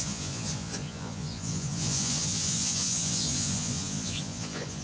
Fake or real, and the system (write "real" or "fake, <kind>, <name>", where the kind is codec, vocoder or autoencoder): fake, vocoder, Vocos